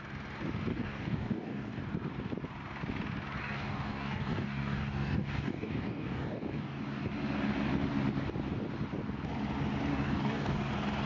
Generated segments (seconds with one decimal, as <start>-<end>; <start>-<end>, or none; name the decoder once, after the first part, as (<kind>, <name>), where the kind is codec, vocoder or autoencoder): 0.7-1.8 (codec, DAC); 3.4-7.0; 9.9-10.7